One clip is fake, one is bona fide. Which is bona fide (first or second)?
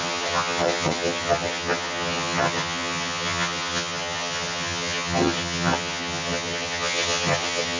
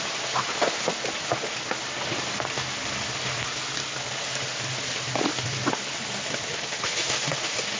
second